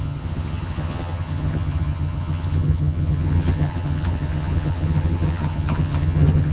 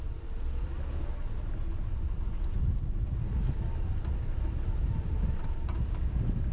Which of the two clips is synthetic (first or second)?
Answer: first